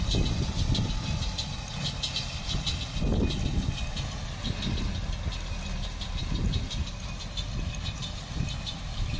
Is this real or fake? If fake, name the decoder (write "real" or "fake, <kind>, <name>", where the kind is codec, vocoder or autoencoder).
real